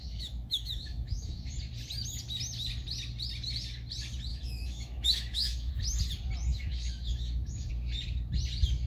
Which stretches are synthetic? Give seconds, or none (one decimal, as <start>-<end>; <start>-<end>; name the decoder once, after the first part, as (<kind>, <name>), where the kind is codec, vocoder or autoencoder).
0.0-1.5 (autoencoder, DAC-VAE); 4.3-5.7; 6.5-7.7